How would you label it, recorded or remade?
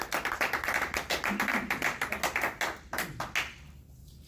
recorded